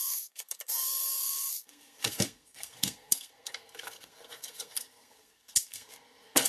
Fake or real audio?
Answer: fake